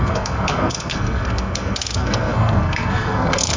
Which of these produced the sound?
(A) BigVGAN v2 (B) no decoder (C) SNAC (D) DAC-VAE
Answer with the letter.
C